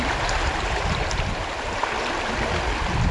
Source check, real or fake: real